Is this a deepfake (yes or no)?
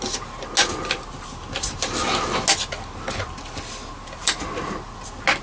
no